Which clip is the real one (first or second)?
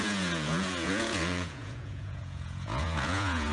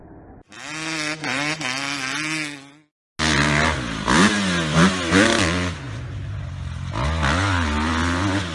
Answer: second